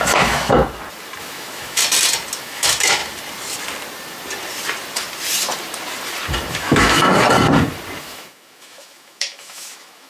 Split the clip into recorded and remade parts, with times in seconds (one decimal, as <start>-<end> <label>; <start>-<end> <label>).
0.0-0.6 remade; 0.6-1.2 recorded; 1.2-1.8 remade; 1.8-2.4 recorded; 2.4-3.0 remade; 3.0-6.5 recorded; 6.5-7.0 remade; 7.0-8.0 recorded; 8.0-10.1 remade